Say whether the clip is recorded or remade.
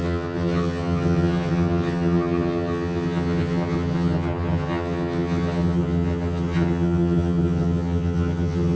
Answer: remade